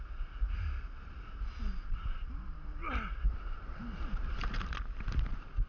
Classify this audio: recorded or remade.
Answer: recorded